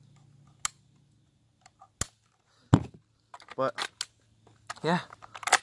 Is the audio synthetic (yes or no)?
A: no